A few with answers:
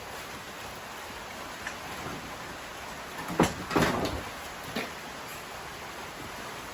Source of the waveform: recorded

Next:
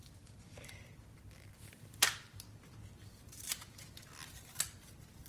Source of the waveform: remade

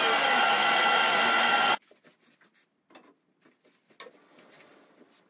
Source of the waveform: recorded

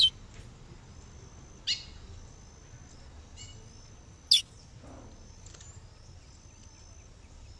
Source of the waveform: recorded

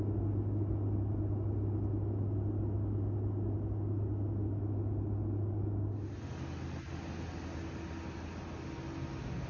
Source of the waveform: recorded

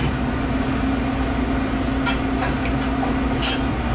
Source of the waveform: recorded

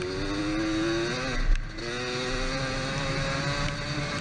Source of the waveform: recorded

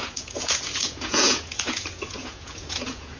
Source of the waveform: remade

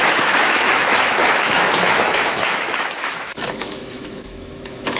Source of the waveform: remade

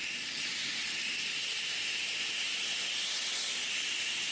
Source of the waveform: recorded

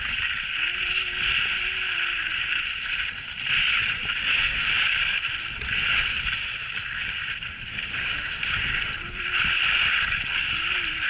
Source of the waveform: remade